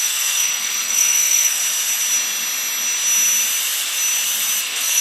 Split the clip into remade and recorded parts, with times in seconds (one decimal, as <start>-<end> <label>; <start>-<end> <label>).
0.0-1.6 remade; 1.6-4.6 recorded; 4.6-5.0 remade